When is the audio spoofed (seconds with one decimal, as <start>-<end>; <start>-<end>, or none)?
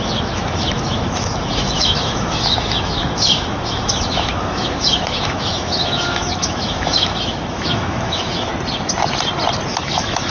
0.0-8.5; 9.7-10.3